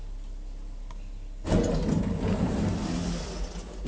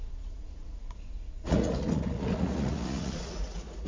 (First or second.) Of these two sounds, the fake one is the second